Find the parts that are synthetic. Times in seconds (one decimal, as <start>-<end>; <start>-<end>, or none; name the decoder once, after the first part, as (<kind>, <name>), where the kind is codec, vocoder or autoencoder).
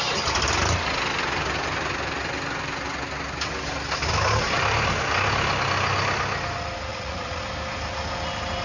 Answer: 6.9-7.4 (vocoder, Vocos)